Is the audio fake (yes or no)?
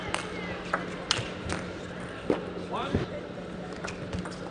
no